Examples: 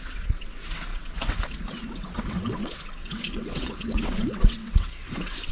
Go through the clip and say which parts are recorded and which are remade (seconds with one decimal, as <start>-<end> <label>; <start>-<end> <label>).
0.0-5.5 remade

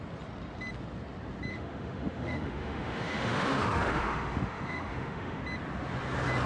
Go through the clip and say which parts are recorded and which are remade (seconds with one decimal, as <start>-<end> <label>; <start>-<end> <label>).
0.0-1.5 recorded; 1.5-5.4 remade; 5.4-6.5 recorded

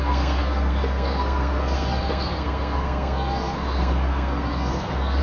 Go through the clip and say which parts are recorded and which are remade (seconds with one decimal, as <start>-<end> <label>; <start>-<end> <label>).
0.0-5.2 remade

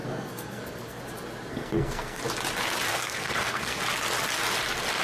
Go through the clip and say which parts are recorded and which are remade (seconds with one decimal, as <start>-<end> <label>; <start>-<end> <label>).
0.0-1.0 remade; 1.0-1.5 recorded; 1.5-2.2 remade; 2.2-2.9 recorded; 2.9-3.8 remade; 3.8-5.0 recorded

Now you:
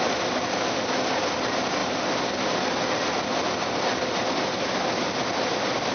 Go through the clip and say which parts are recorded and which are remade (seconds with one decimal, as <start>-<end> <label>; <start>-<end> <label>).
0.0-5.9 recorded

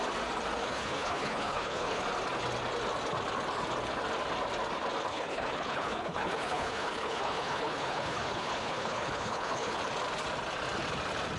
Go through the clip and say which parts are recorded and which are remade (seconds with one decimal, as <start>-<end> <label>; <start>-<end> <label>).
0.0-0.6 recorded; 0.6-2.0 remade; 2.0-5.1 recorded; 5.1-9.8 remade; 9.8-11.4 recorded

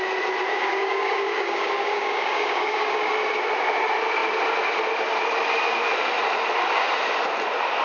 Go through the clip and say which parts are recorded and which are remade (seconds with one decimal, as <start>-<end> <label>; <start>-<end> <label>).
0.0-0.5 recorded; 0.5-3.1 remade; 3.1-7.8 recorded

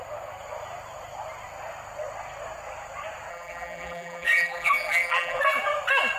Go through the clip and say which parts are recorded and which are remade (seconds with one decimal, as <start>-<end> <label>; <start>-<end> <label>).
0.0-3.3 recorded; 3.3-5.4 remade; 5.4-6.2 recorded